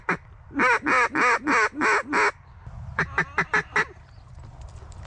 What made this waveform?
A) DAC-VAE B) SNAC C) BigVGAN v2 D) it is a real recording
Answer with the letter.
D